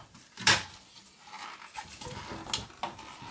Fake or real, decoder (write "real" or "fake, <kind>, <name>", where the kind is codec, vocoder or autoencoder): real